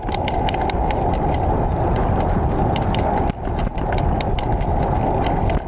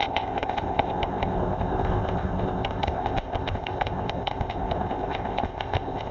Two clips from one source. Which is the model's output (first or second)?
second